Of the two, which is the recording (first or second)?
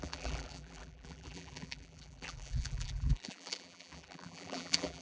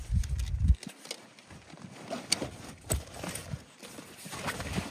second